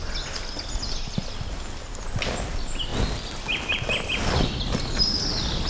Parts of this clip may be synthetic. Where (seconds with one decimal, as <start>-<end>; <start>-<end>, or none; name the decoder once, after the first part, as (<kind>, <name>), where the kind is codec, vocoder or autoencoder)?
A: none